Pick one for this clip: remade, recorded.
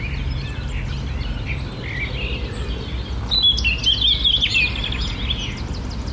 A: recorded